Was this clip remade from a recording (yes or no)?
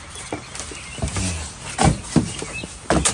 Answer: no